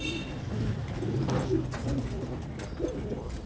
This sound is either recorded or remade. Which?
recorded